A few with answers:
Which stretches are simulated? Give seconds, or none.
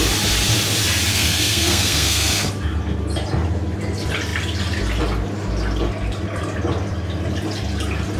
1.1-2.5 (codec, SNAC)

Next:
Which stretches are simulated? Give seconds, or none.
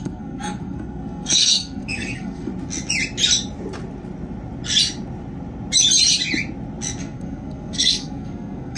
0.0-2.5 (codec, SNAC); 7.0-8.8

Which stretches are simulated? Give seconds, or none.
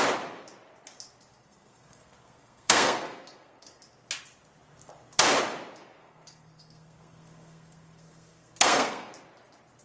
1.4-3.8 (codec, SNAC); 6.0-9.1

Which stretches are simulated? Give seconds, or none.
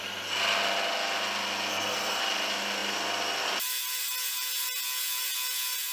1.7-2.2 (codec, SNAC)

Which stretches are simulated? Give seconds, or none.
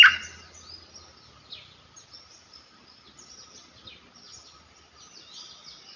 none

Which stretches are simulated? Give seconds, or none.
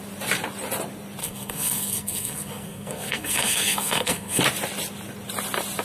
1.2-4.4 (codec, SNAC)